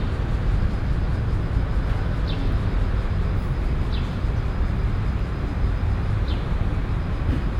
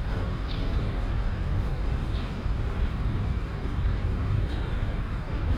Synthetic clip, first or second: second